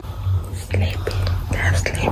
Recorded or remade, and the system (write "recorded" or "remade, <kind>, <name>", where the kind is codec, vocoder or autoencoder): recorded